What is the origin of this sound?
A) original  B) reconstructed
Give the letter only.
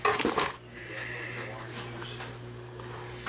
A